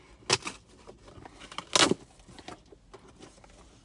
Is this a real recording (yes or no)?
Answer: yes